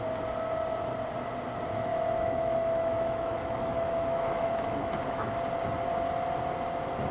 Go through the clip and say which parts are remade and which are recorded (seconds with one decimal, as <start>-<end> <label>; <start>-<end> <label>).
0.0-1.9 recorded; 1.9-5.4 remade; 5.4-7.1 recorded